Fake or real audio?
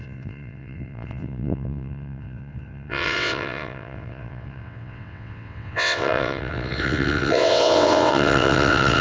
fake